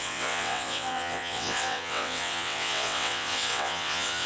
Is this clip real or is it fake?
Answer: fake